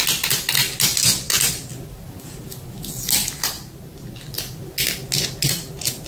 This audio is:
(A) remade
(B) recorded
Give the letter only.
B